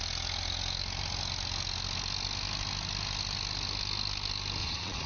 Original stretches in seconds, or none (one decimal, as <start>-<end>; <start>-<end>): 0.0-4.6